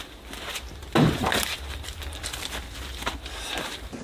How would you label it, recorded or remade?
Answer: recorded